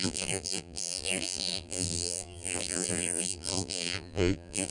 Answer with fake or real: fake